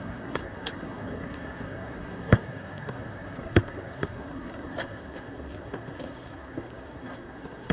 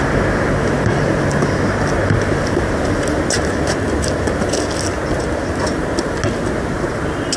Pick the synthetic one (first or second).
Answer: first